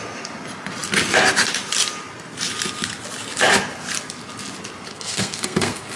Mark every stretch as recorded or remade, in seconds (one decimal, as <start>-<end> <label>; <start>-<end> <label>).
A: 0.0-4.9 recorded; 4.9-6.0 remade